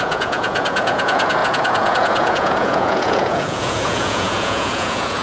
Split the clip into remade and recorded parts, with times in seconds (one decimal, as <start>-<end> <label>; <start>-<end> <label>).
0.0-5.2 remade